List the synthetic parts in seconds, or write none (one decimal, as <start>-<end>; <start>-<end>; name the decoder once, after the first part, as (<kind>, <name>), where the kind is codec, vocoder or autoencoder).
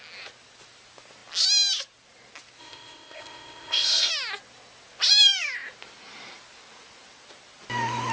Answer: 2.6-4.1 (codec, ZipCodec)